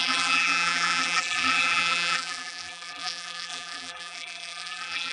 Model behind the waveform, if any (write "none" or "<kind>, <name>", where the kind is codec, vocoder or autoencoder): vocoder, BigVGAN v2